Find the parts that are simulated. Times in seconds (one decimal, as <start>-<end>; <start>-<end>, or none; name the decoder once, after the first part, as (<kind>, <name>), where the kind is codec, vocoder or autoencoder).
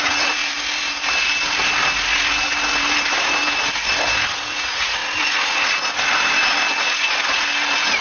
0.0-0.4 (vocoder, Vocos); 4.5-5.0